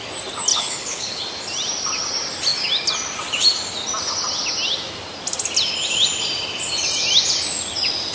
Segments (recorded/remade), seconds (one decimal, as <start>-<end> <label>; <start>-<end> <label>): 0.0-0.5 recorded; 0.5-1.2 remade; 1.2-8.1 recorded